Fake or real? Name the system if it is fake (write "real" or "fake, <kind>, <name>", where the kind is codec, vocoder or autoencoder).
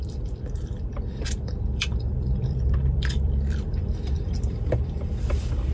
fake, vocoder, BigVGAN v2